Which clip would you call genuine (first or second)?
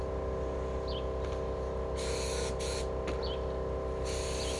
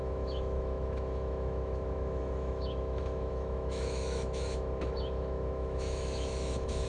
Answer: first